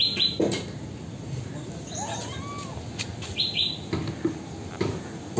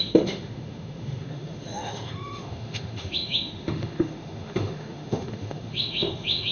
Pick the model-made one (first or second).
second